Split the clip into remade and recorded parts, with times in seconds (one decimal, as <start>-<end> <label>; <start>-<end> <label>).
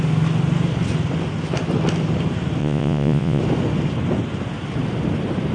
0.0-2.6 recorded; 2.6-3.4 remade; 3.4-5.5 recorded